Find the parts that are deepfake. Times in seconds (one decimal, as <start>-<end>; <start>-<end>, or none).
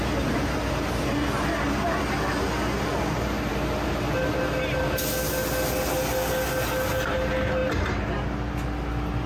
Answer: none